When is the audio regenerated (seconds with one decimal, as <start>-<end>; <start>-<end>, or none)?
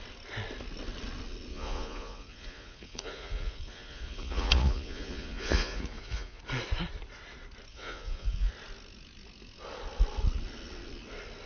1.5-6.4; 7.7-8.5